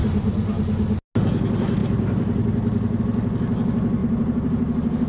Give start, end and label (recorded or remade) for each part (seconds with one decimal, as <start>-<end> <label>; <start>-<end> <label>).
0.0-0.6 remade; 0.6-1.8 recorded; 1.8-3.0 remade; 3.0-4.0 recorded; 4.0-5.1 remade